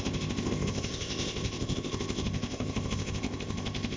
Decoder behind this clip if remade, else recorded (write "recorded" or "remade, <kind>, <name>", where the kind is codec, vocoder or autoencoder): remade, codec, ZipCodec